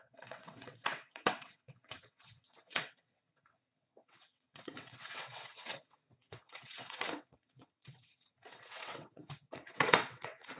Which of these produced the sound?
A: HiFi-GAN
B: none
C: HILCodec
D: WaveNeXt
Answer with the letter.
D